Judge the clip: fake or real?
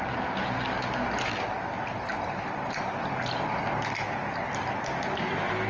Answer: real